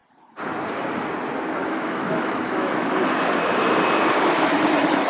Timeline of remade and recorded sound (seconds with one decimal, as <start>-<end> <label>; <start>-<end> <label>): 0.0-1.6 recorded; 1.6-2.9 remade; 2.9-5.1 recorded